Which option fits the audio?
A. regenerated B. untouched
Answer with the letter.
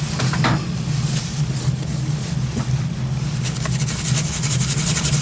B